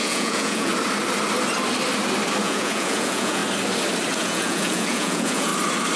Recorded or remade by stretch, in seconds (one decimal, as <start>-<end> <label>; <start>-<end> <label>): 0.0-0.7 remade; 0.7-2.4 recorded; 2.4-3.4 remade; 3.4-4.1 recorded; 4.1-5.5 remade; 5.5-6.0 recorded